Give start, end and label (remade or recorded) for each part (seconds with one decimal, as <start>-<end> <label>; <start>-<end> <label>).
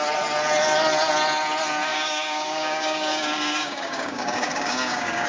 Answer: 0.0-1.9 recorded; 1.9-5.3 remade